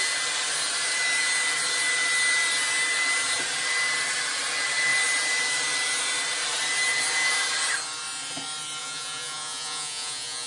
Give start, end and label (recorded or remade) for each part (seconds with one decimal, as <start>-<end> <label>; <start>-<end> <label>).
0.0-8.8 recorded; 8.8-10.5 remade